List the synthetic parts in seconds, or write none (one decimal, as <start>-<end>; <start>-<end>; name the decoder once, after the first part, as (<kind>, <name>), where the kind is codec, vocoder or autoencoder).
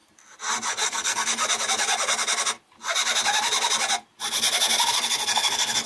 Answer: 0.7-1.4 (codec, SNAC); 4.9-5.9